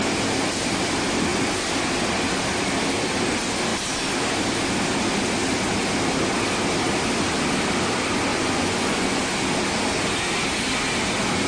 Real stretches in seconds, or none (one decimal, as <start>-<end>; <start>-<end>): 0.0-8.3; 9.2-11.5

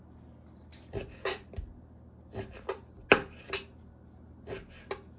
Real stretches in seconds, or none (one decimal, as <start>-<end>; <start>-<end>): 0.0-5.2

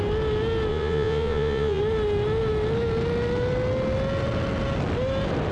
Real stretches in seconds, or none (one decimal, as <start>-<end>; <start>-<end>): 0.0-0.7; 1.8-5.5

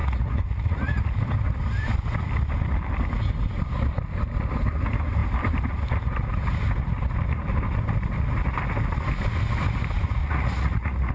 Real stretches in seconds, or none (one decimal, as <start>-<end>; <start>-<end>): 1.0-10.2

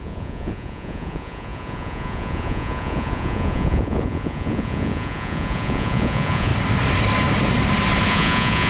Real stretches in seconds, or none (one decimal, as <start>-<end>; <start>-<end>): 6.5-8.1